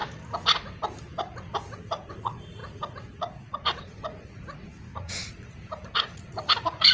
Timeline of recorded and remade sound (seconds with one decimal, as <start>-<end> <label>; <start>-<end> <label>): 0.0-2.1 recorded; 2.1-6.9 remade